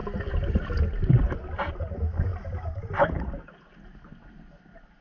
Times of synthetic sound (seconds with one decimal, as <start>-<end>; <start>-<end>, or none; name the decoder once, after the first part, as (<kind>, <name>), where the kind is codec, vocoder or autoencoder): none